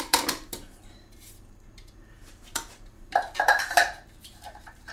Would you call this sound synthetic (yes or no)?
yes